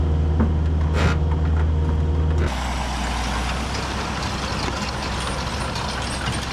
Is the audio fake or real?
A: real